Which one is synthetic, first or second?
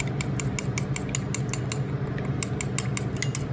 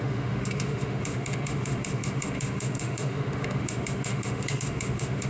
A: second